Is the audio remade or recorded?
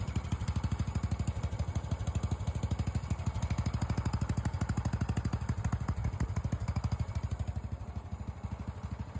recorded